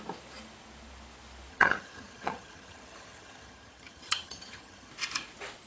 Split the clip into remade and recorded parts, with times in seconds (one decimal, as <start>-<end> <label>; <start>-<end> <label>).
0.0-1.5 recorded; 1.5-4.9 remade; 4.9-5.7 recorded